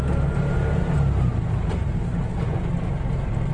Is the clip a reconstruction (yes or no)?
no